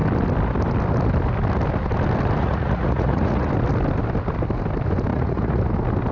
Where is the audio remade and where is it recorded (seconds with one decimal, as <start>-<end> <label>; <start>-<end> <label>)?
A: 0.0-2.4 recorded; 2.4-3.5 remade; 3.5-5.1 recorded; 5.1-5.6 remade; 5.6-6.1 recorded